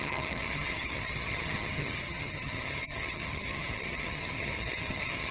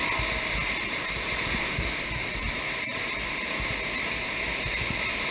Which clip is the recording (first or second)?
second